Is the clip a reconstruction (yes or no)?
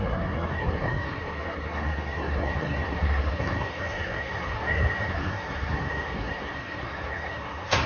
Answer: yes